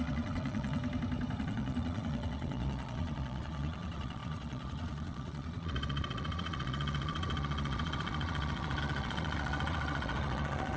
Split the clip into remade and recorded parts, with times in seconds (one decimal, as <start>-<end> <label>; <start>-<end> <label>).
0.0-0.8 remade; 0.8-1.4 recorded; 1.4-10.8 remade